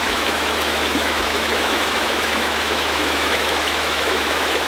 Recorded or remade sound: remade